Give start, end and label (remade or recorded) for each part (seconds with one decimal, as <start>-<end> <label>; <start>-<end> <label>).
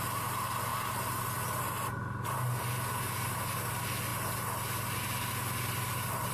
0.0-6.3 recorded